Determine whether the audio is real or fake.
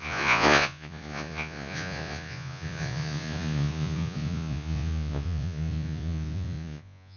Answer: fake